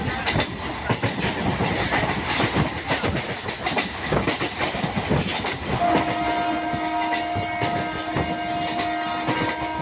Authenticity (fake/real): real